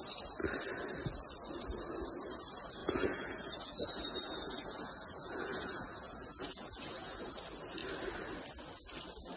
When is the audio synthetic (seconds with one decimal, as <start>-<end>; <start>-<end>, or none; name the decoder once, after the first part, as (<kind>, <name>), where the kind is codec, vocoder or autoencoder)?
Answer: 2.8-7.3 (vocoder, Vocos)